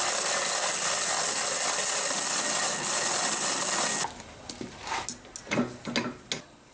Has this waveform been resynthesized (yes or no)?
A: no